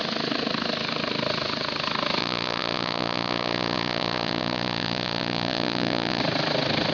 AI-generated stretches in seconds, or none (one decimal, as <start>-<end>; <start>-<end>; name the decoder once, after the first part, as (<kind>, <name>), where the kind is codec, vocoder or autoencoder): 2.2-6.2 (vocoder, Vocos)